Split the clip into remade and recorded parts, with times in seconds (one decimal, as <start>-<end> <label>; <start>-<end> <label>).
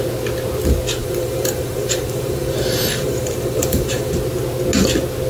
0.0-1.0 recorded; 1.0-4.1 remade; 4.1-5.3 recorded